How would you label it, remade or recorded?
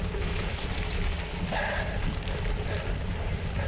recorded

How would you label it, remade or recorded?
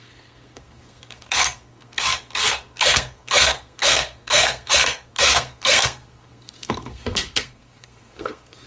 remade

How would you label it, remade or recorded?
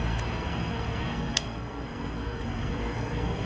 remade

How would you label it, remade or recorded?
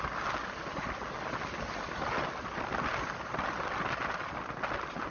recorded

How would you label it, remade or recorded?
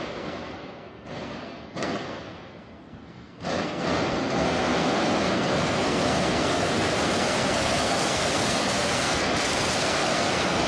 remade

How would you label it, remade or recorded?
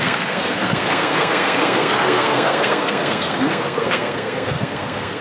remade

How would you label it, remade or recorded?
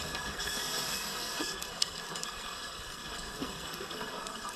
remade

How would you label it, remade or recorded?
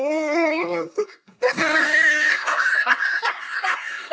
remade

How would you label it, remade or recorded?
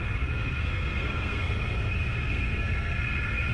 remade